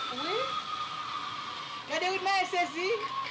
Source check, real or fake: real